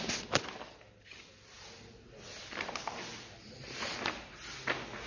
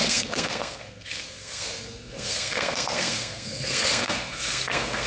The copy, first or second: second